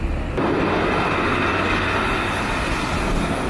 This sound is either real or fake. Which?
real